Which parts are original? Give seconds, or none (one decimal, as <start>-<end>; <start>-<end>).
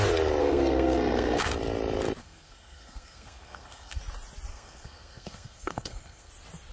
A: 0.0-0.4; 1.4-2.2; 4.0-4.5; 6.3-6.7